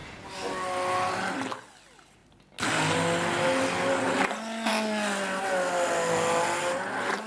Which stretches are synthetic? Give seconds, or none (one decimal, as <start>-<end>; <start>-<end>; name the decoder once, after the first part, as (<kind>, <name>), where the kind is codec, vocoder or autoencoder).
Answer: none